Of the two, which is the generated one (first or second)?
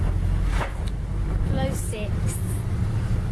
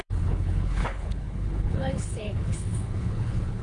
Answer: second